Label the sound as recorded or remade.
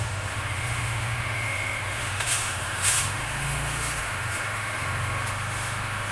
remade